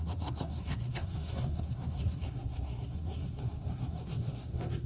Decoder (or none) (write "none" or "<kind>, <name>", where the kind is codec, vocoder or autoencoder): codec, SNAC